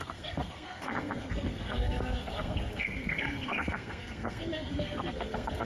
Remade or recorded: remade